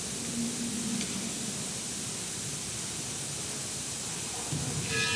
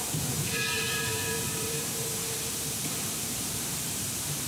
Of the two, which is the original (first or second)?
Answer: first